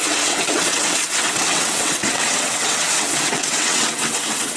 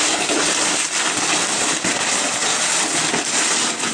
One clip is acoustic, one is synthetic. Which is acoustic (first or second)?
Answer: second